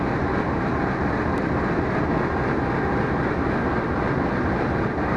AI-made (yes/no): no